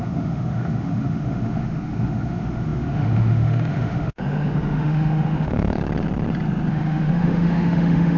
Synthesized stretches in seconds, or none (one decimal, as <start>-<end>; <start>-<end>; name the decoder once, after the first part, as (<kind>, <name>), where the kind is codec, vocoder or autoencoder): 0.0-5.8 (autoencoder, DAC-VAE); 6.7-8.2